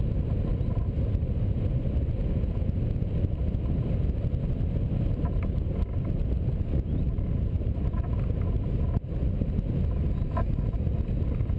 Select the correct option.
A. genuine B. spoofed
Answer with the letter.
A